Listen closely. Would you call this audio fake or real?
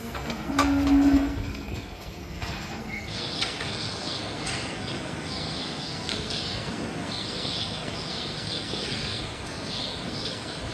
fake